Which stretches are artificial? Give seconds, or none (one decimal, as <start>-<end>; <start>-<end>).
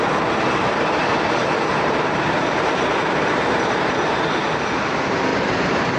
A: 1.4-3.9; 5.3-6.0